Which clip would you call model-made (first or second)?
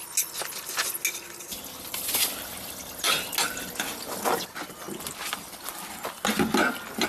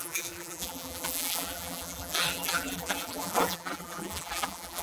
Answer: second